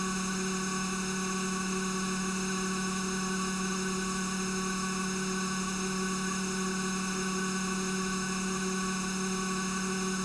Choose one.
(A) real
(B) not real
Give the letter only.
B